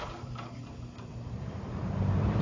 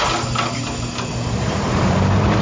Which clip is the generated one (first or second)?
first